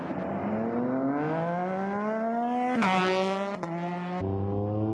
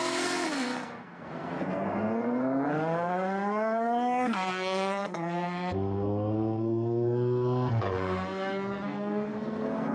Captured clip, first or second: first